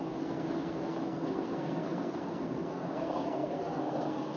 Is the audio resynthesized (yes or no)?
yes